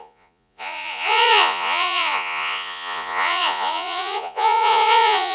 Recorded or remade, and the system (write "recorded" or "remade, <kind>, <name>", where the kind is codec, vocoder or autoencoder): remade, vocoder, Vocos